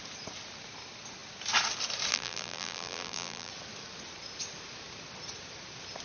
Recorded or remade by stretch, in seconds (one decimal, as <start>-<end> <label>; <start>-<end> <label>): 0.0-2.1 recorded; 2.1-3.5 remade; 3.5-6.0 recorded